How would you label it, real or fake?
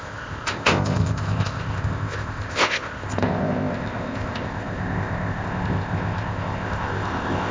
fake